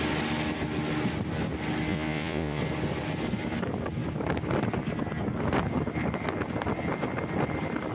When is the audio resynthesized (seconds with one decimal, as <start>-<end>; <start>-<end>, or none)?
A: 1.9-2.6